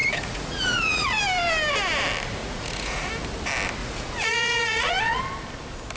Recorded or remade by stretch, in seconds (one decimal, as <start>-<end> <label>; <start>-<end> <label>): 0.0-1.2 remade; 1.2-2.4 recorded; 2.4-3.1 remade; 3.1-3.8 recorded; 3.8-5.2 remade; 5.2-6.0 recorded